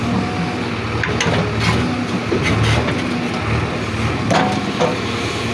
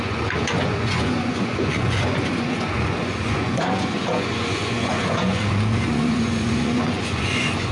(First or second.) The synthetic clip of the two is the second